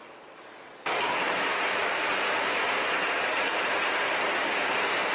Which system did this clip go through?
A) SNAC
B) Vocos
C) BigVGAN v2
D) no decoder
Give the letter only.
C